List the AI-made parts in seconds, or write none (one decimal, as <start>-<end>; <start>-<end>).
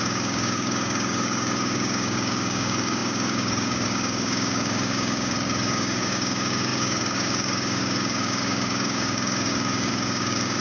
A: 0.0-10.6